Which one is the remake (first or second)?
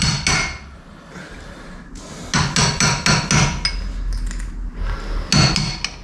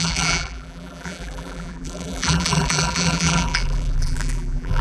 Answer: second